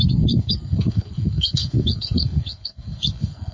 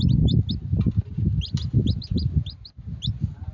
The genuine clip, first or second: second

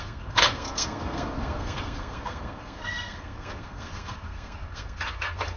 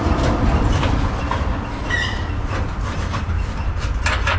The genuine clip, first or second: second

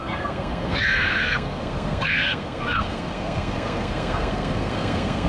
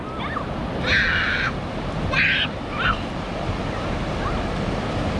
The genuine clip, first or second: second